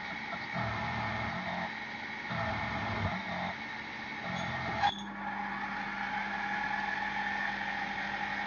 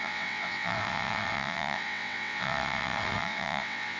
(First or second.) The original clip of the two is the first